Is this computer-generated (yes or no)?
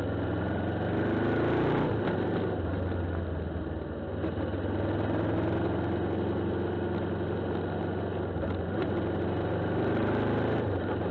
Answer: no